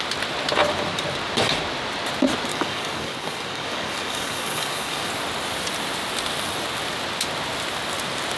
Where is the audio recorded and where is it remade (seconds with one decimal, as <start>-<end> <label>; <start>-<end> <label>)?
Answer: 0.0-2.5 recorded; 2.5-5.1 remade; 5.1-8.4 recorded